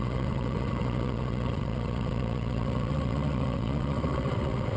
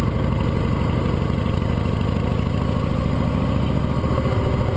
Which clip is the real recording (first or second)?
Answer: second